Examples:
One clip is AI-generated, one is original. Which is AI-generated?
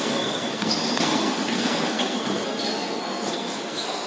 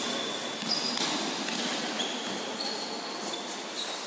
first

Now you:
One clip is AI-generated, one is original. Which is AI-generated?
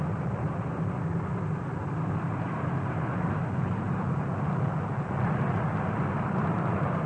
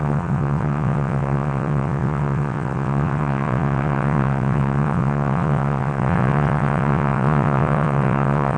second